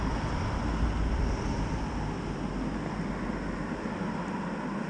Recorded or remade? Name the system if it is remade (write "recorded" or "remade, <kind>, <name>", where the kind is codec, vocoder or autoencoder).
recorded